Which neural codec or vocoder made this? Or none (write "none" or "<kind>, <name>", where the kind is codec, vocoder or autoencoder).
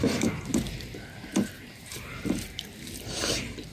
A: vocoder, BigVGAN v2